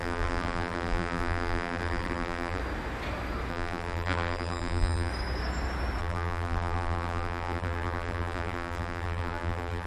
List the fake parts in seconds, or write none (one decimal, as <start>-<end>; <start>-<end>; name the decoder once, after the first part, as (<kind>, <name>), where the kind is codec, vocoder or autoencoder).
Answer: 0.0-2.6 (vocoder, BigVGAN v2); 3.5-5.1; 6.0-9.9